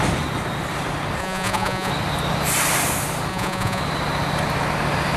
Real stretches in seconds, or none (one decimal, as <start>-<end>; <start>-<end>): 0.0-1.2; 1.9-3.3; 3.8-5.2